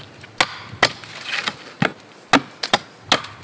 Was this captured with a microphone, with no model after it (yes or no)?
yes